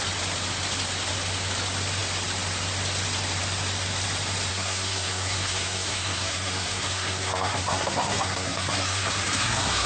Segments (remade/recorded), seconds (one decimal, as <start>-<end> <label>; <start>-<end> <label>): 0.0-4.5 recorded; 4.5-9.9 remade